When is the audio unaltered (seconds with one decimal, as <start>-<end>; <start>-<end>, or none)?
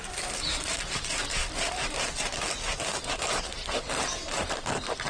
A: none